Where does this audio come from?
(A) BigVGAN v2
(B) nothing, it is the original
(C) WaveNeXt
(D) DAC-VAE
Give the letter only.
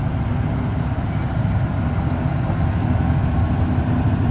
B